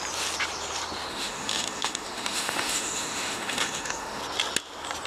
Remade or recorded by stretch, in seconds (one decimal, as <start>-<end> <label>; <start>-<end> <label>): 0.0-1.1 recorded; 1.1-4.2 remade; 4.2-5.1 recorded